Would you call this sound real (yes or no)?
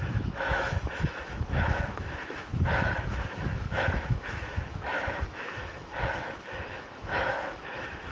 no